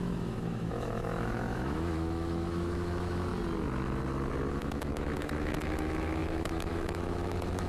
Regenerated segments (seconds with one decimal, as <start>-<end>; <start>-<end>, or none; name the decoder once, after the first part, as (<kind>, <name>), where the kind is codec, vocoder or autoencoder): 0.0-3.3 (autoencoder, DAC-VAE); 4.5-7.7